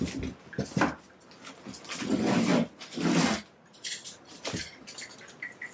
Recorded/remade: recorded